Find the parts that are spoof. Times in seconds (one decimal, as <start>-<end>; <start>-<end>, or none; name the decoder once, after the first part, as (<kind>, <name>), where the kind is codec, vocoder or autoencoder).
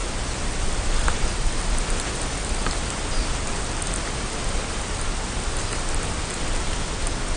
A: none